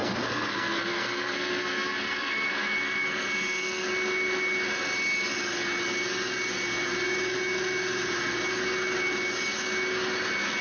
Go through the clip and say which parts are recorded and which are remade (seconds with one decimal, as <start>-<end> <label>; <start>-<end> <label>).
0.0-3.9 remade; 3.9-10.6 recorded